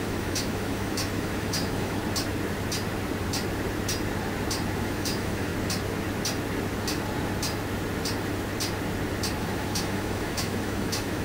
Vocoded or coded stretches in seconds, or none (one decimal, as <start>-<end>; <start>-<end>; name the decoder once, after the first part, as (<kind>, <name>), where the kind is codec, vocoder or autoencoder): 0.0-2.0 (autoencoder, DAC-VAE); 4.8-5.5; 9.4-11.2